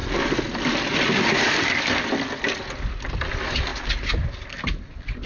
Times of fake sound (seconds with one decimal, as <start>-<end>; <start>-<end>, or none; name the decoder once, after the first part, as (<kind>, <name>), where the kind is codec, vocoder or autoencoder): none